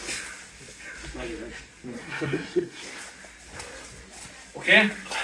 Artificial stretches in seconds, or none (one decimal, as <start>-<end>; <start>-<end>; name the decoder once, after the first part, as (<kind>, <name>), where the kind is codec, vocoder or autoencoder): 2.0-2.8 (codec, SNAC)